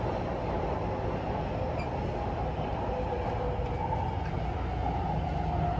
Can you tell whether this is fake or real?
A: real